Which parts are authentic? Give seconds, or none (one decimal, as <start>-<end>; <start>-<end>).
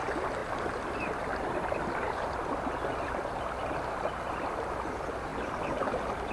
0.0-0.4; 2.4-5.3